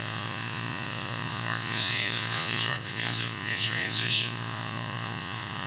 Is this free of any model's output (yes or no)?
no